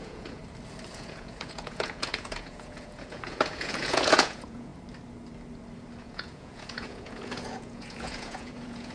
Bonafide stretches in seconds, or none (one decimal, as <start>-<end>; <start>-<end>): 0.4-0.9; 4.7-6.0